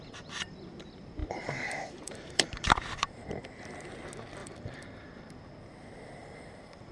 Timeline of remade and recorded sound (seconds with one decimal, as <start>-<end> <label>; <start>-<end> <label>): 0.0-1.2 recorded; 1.2-3.4 remade; 3.4-4.4 recorded; 4.4-5.2 remade; 5.2-6.2 recorded; 6.2-6.9 remade